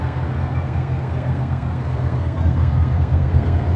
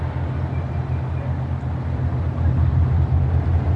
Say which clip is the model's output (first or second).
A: first